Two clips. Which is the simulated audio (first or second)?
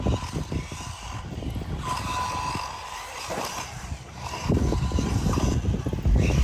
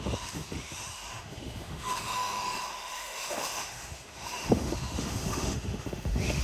second